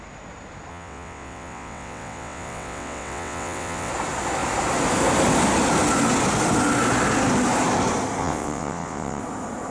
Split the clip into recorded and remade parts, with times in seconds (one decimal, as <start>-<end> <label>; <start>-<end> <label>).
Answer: 0.0-0.7 recorded; 0.7-3.9 remade; 3.9-8.2 recorded; 8.2-9.2 remade; 9.2-9.7 recorded